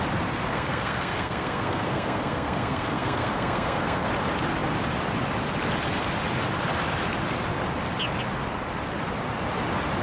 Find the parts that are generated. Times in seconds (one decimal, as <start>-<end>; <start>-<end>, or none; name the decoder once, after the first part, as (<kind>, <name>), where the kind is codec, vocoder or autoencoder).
0.5-4.1 (codec, SNAC)